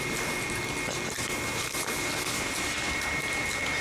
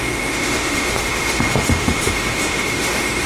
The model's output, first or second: second